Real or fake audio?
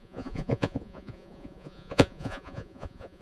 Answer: fake